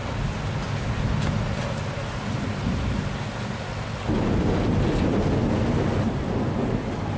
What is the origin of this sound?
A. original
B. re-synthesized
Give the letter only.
A